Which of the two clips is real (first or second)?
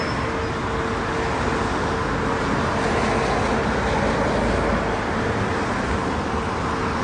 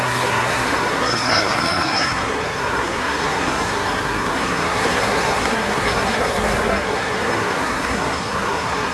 first